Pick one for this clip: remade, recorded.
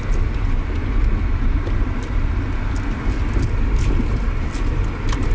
recorded